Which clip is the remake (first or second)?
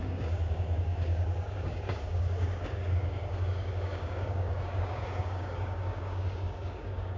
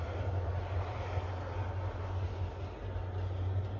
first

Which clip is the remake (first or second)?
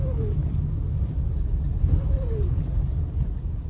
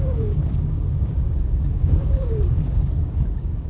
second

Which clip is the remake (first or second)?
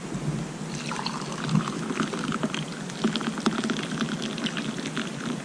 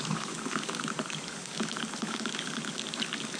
second